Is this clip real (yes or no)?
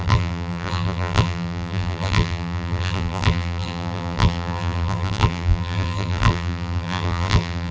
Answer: no